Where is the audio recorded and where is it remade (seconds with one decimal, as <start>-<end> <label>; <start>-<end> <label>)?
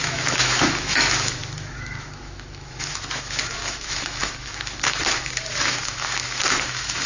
0.0-7.1 remade